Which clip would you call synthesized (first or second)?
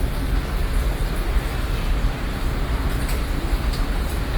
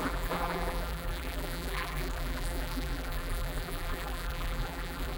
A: second